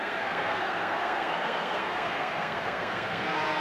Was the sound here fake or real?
fake